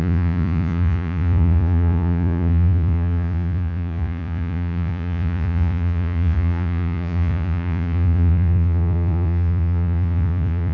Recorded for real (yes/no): no